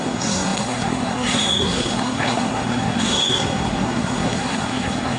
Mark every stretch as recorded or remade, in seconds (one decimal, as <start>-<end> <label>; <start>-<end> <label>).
0.0-5.2 remade